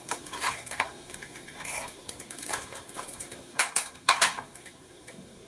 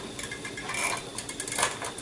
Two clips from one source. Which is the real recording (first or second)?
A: second